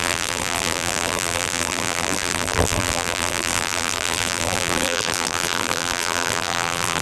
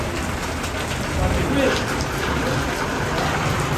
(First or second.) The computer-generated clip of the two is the first